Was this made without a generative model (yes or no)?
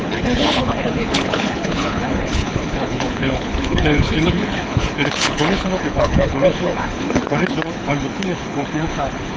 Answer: no